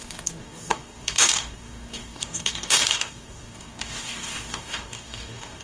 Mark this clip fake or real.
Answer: fake